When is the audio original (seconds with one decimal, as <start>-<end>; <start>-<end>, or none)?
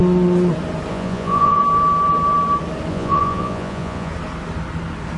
0.0-0.9; 1.6-2.9; 4.1-5.2